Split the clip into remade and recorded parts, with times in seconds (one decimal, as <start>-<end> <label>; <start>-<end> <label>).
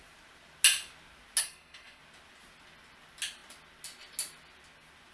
0.0-1.4 recorded; 1.4-2.0 remade; 2.0-5.1 recorded